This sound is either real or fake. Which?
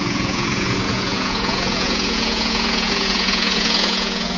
fake